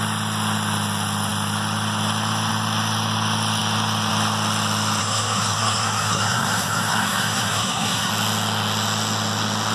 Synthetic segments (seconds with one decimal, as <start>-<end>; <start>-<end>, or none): 5.0-8.1